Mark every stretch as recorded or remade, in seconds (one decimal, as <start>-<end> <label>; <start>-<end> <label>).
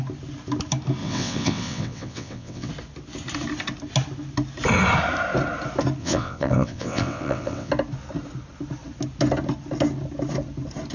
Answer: 0.0-1.0 recorded; 1.0-2.7 remade; 2.7-6.0 recorded; 6.0-7.7 remade; 7.7-10.9 recorded